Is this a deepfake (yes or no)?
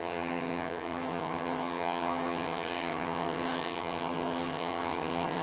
yes